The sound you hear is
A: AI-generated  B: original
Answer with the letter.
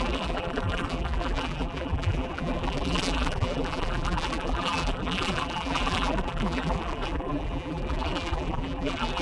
A